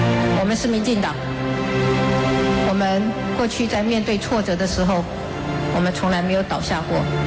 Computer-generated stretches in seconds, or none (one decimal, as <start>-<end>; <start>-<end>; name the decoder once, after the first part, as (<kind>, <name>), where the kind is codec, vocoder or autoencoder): none